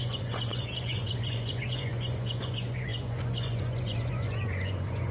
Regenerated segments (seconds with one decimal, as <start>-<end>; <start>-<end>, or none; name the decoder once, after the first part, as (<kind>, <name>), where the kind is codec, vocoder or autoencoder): 0.0-5.1 (vocoder, Vocos)